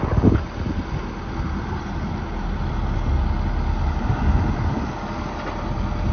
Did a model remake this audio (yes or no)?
no